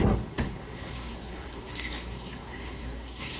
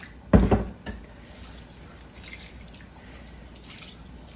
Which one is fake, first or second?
first